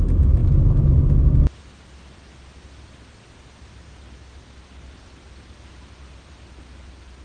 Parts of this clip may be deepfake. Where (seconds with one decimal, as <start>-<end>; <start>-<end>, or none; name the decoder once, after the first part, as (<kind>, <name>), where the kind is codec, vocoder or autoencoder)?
none